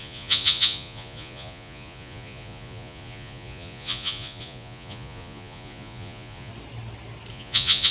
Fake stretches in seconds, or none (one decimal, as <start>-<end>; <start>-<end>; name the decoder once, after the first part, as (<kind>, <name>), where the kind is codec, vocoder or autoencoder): 0.0-6.5 (vocoder, Vocos); 7.3-7.9